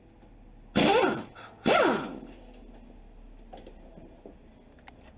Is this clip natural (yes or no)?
yes